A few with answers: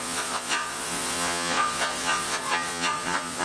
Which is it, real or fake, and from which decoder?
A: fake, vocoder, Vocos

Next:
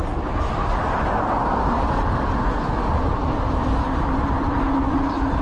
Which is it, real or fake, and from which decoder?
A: real